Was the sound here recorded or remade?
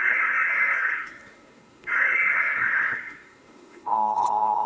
remade